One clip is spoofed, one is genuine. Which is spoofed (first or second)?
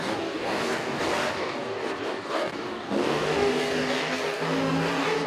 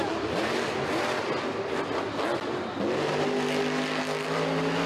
first